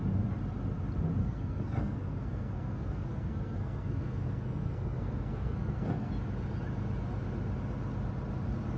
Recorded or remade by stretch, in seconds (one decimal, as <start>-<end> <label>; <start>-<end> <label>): 0.0-1.2 recorded; 1.2-6.1 remade; 6.1-8.8 recorded